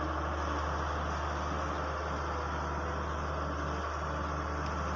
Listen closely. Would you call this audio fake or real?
real